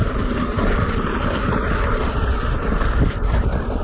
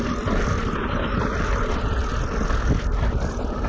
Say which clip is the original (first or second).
second